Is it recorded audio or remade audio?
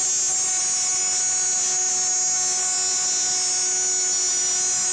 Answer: recorded